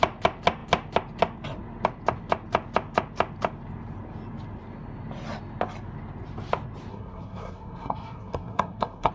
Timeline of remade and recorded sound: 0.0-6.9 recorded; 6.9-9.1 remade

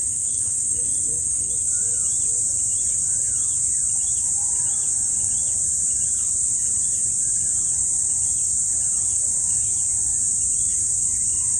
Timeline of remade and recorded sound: 0.0-1.5 remade; 1.5-11.6 recorded